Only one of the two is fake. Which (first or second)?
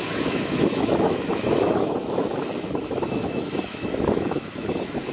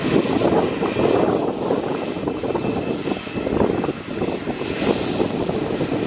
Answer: first